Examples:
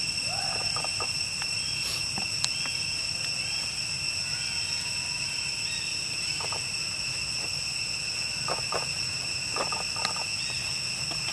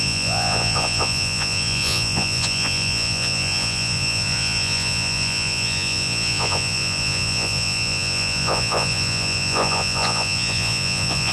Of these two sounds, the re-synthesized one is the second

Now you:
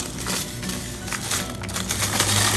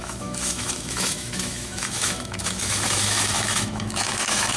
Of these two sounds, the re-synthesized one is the second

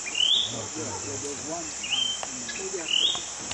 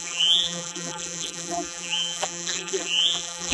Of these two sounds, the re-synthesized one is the second